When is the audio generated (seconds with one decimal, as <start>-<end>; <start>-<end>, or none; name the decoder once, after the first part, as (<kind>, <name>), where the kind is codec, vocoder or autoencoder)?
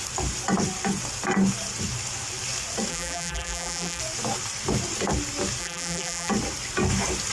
2.9-4.0 (vocoder, BigVGAN v2); 5.6-6.3